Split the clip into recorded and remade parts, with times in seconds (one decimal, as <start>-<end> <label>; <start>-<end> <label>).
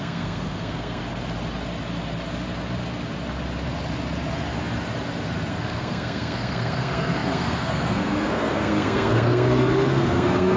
0.0-1.0 remade; 1.0-5.5 recorded; 5.5-10.6 remade